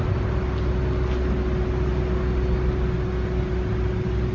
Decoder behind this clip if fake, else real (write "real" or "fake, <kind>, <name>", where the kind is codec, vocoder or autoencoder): real